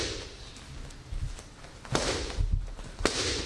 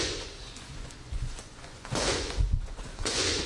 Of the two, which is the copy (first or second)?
second